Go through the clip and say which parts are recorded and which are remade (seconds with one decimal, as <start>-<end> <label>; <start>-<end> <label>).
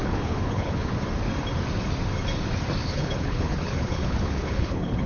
0.0-0.9 remade; 0.9-2.8 recorded; 2.8-5.1 remade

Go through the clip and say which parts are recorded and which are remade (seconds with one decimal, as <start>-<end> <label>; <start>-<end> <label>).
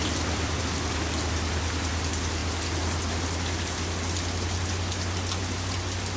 0.0-6.2 recorded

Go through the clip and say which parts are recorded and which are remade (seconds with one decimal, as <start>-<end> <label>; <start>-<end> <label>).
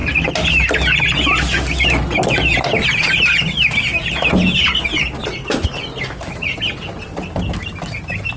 0.0-8.4 recorded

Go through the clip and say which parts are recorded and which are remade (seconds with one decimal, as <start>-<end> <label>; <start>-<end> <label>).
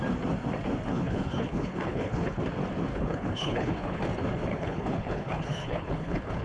0.0-0.9 recorded; 0.9-2.4 remade; 2.4-2.9 recorded; 2.9-4.0 remade; 4.0-4.5 recorded; 4.5-6.4 remade